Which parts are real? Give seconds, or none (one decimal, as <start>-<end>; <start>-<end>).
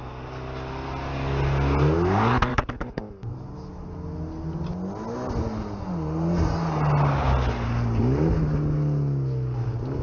0.0-2.5; 3.0-10.0